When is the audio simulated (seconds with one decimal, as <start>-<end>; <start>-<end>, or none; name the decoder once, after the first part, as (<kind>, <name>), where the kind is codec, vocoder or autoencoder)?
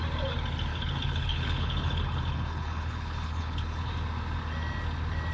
0.7-3.9 (codec, HILCodec)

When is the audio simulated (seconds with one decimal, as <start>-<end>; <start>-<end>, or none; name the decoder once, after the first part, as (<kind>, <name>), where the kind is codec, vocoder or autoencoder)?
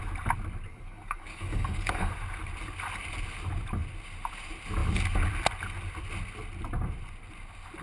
0.7-2.1 (codec, DAC)